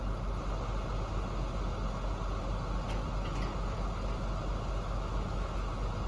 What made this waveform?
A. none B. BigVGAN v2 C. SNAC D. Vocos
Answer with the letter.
A